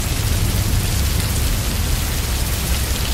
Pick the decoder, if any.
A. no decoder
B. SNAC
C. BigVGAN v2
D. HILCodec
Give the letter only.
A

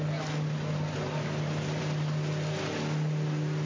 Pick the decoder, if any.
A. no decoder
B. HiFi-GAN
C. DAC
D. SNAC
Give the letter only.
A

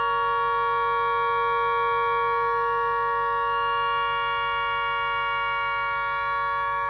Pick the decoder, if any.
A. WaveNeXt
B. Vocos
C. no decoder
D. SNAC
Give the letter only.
C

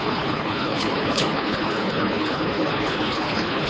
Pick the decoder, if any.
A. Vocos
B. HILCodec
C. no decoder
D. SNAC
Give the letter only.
B